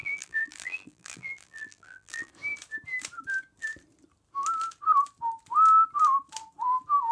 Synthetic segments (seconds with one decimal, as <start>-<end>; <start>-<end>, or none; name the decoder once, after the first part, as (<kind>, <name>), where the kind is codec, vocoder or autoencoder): 0.0-2.3 (vocoder, BigVGAN v2)